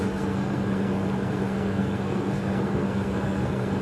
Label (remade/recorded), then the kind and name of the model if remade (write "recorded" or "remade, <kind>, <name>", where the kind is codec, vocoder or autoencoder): remade, codec, SNAC